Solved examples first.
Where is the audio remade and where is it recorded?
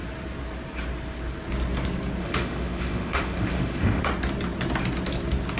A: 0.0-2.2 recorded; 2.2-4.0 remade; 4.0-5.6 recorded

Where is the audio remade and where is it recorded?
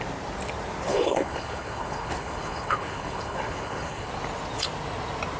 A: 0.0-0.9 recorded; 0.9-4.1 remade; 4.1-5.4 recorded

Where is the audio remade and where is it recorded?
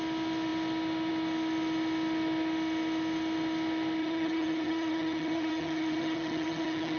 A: 0.0-4.0 recorded; 4.0-7.0 remade